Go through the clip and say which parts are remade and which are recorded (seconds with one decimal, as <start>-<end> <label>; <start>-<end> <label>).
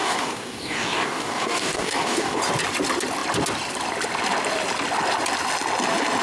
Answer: 0.0-2.4 remade; 2.4-6.2 recorded